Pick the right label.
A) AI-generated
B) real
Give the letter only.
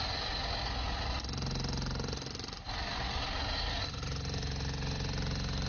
B